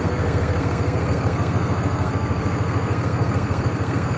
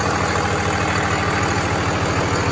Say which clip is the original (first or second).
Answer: second